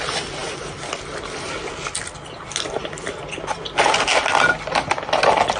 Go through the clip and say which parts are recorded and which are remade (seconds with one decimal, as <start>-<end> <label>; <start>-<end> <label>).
0.0-5.6 recorded